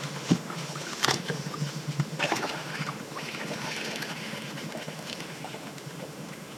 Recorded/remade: remade